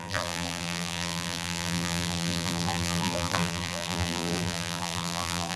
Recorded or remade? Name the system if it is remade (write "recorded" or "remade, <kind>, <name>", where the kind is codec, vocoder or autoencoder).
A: remade, vocoder, BigVGAN v2